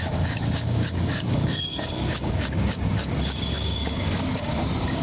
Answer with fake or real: fake